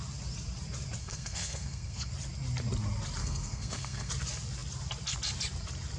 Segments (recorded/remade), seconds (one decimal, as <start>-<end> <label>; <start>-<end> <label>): 0.0-1.0 recorded; 1.0-2.1 remade; 2.1-3.2 recorded; 3.2-4.1 remade; 4.1-6.0 recorded